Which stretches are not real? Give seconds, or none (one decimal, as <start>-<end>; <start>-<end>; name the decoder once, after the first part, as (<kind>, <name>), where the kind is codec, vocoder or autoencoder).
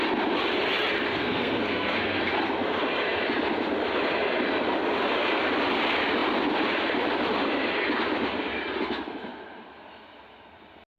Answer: 1.1-2.2 (codec, SNAC)